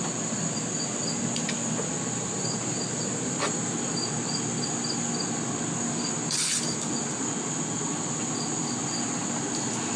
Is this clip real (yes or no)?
yes